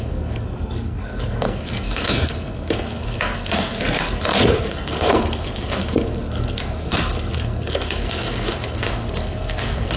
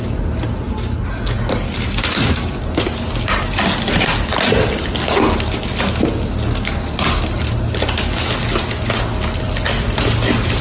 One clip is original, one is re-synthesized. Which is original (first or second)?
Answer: second